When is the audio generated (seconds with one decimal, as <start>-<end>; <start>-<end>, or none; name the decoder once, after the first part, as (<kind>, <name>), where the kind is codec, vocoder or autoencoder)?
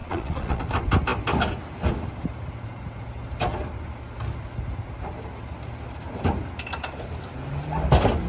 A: 0.0-0.6 (vocoder, Vocos)